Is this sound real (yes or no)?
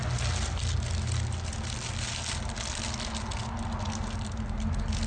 yes